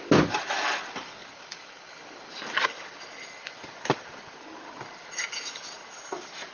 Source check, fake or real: real